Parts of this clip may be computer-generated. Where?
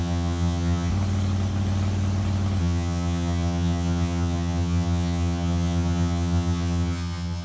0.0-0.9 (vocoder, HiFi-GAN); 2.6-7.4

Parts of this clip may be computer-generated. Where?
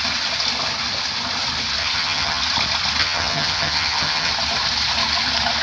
1.8-2.4 (vocoder, HiFi-GAN); 3.0-4.3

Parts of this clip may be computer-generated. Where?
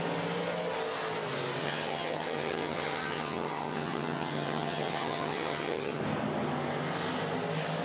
1.6-6.0 (vocoder, HiFi-GAN)